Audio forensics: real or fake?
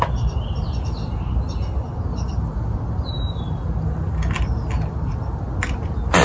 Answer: real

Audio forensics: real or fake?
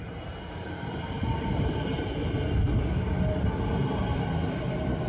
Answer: real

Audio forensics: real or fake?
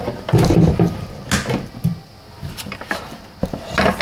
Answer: real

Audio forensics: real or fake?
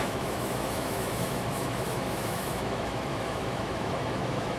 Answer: fake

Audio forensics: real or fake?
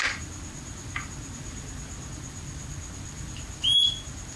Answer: real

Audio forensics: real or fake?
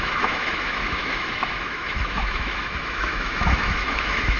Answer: fake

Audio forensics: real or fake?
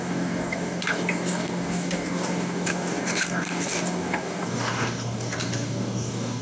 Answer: fake